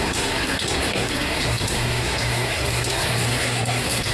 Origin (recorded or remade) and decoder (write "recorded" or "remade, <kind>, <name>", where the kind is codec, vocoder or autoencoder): remade, codec, SNAC